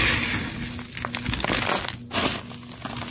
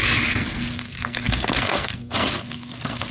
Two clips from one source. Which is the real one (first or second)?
first